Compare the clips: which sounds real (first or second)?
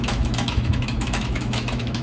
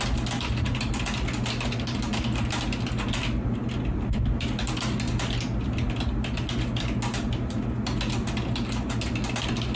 second